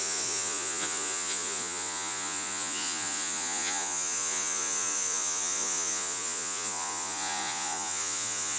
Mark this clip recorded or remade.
remade